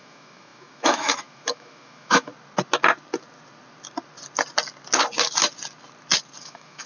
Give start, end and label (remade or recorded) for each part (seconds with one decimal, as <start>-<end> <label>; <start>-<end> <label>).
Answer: 0.0-2.3 remade; 2.3-6.4 recorded; 6.4-6.9 remade